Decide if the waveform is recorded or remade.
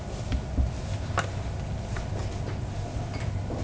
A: recorded